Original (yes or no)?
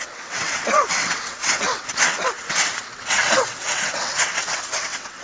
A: no